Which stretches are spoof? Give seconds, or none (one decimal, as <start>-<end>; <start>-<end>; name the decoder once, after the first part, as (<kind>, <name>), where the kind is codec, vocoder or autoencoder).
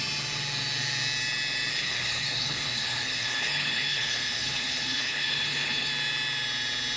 1.7-5.9 (codec, HILCodec)